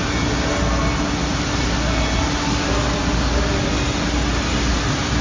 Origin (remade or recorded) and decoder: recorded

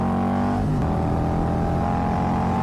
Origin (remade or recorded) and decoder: recorded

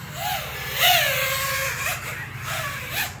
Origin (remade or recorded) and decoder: recorded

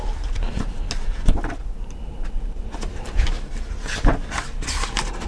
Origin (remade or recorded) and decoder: recorded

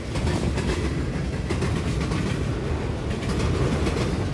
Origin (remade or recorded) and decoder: recorded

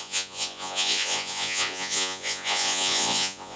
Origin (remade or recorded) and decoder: remade, vocoder, Vocos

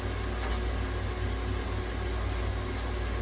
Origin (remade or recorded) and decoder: recorded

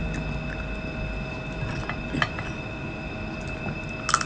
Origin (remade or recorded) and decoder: recorded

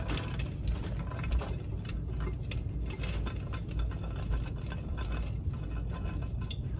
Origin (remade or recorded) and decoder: recorded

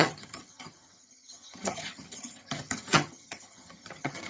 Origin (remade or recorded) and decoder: remade, vocoder, HiFi-GAN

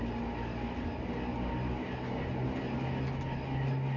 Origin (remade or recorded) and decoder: recorded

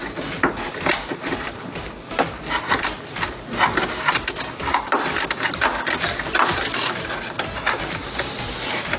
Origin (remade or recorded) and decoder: recorded